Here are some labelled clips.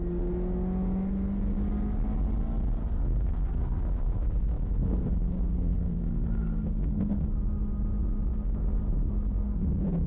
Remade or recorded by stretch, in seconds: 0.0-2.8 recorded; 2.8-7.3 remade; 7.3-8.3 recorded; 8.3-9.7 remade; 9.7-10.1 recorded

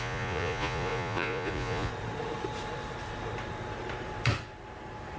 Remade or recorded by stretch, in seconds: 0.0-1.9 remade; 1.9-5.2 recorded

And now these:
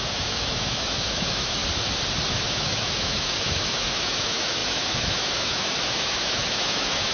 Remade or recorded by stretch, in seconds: 0.0-1.6 remade; 1.6-2.3 recorded; 2.3-7.1 remade

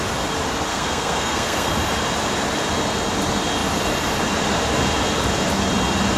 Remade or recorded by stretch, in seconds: 0.0-0.7 recorded; 0.7-1.7 remade; 1.7-6.2 recorded

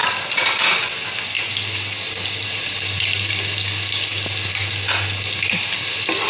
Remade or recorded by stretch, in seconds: 0.0-6.3 recorded

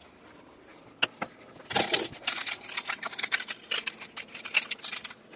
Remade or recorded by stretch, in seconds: 0.0-5.4 recorded

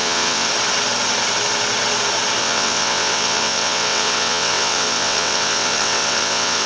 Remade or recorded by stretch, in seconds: 0.0-0.5 remade; 0.5-2.4 recorded; 2.4-6.7 remade